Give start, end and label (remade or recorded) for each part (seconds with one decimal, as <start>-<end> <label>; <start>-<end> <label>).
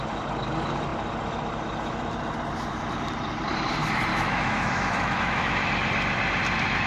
0.0-4.1 recorded; 4.1-5.7 remade; 5.7-6.9 recorded